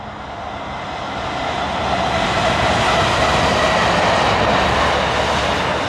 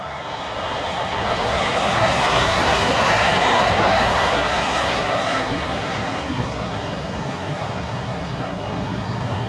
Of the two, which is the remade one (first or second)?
second